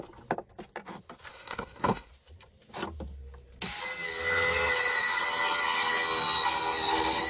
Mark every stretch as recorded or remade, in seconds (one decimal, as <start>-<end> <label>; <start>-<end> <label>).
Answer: 0.0-1.3 recorded; 1.3-2.1 remade; 2.1-7.3 recorded